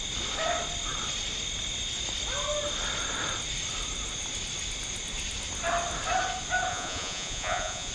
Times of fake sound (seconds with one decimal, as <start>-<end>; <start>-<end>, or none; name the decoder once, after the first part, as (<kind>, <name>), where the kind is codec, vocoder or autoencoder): 6.7-7.9 (vocoder, Vocos)